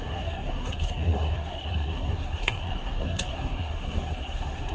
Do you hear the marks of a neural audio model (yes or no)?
yes